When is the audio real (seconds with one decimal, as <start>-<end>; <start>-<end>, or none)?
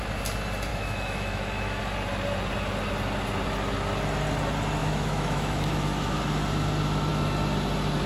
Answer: 0.0-0.7; 1.8-4.8; 6.2-8.1